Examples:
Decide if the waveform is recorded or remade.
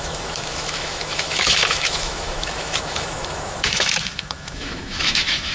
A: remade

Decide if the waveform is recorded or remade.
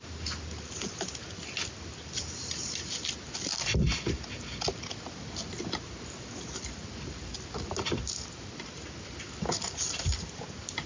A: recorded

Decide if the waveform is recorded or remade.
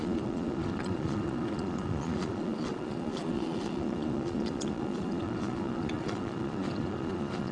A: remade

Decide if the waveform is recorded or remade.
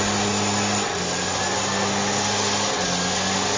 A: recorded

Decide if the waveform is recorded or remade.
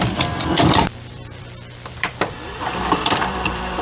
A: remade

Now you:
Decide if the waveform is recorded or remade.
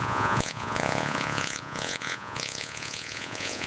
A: remade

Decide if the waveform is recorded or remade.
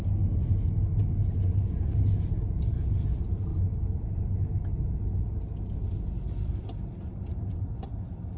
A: recorded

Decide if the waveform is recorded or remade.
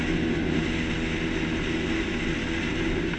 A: recorded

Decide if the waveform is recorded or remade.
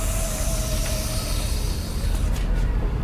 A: remade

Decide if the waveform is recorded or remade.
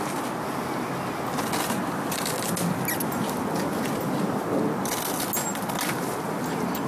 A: recorded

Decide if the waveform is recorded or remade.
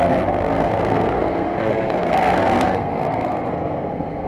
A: remade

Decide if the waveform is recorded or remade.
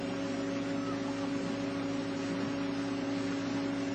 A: recorded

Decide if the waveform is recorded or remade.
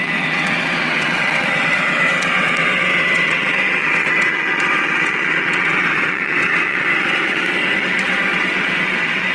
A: remade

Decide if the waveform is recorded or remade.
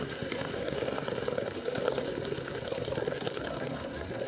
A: remade